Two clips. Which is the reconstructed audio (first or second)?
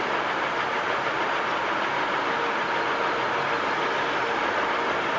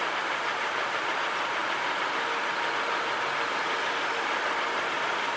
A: second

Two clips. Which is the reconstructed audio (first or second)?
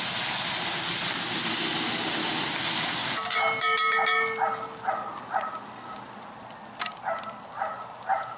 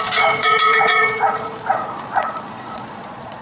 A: second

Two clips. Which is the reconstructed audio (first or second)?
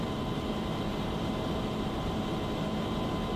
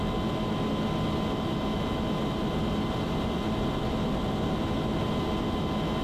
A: first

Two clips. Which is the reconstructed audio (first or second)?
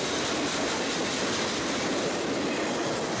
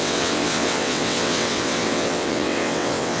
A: second